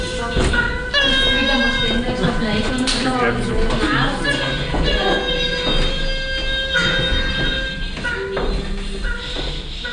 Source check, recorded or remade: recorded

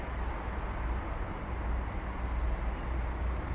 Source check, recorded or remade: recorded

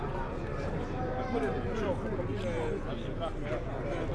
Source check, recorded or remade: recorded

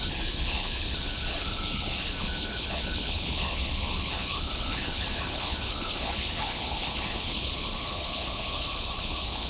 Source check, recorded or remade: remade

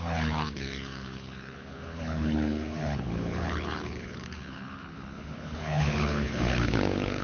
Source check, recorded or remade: remade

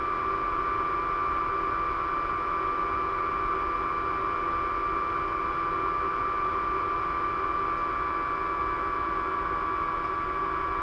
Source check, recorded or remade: recorded